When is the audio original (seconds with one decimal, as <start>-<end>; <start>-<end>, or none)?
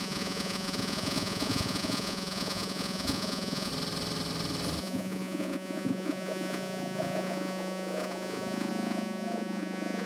3.7-4.8